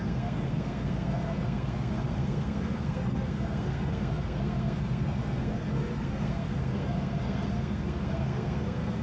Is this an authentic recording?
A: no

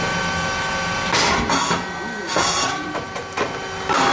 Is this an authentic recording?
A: yes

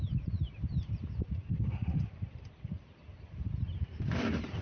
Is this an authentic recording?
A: no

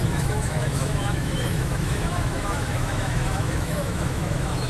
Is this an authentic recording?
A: no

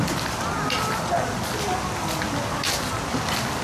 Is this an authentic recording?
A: yes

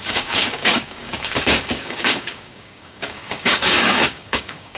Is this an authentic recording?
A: no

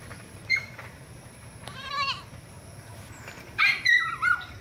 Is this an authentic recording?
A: no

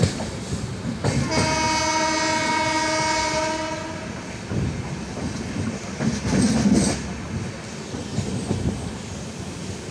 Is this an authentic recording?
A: yes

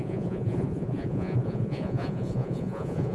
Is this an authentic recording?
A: no